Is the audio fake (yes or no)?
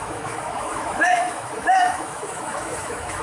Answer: yes